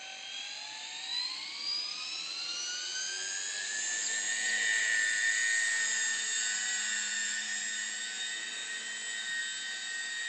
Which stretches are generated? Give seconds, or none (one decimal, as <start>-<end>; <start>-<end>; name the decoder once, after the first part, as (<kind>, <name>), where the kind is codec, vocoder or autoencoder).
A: none